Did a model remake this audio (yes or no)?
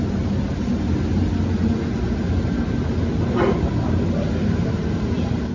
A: no